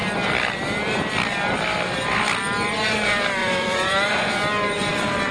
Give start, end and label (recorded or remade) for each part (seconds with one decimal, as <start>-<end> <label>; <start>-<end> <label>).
0.0-3.4 recorded; 3.4-4.3 remade; 4.3-5.3 recorded